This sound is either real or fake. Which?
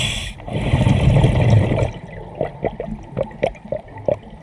real